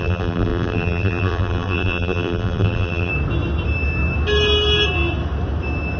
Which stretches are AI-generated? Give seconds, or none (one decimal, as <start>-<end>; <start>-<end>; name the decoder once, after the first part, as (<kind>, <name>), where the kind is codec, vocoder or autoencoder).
0.0-3.1 (vocoder, BigVGAN v2)